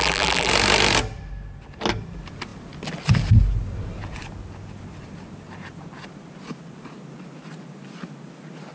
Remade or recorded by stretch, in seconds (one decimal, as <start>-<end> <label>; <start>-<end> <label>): 0.0-0.5 remade; 0.5-8.7 recorded